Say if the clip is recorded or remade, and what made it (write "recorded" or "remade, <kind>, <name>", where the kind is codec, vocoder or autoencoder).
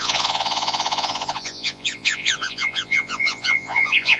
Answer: remade, vocoder, Vocos